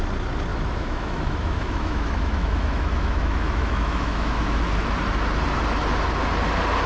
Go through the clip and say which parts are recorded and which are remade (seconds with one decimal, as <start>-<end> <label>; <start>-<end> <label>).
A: 0.0-0.5 recorded; 0.5-4.6 remade; 4.6-6.9 recorded